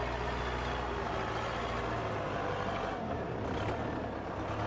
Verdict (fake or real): real